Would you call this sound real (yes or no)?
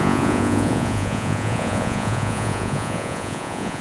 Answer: no